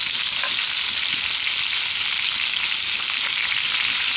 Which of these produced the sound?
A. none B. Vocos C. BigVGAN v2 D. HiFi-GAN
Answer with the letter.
A